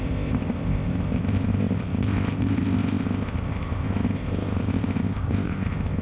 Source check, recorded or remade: remade